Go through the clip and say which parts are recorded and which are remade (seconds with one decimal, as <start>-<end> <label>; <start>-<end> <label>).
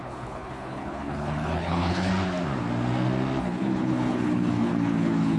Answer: 0.0-2.1 remade; 2.1-3.4 recorded; 3.4-5.4 remade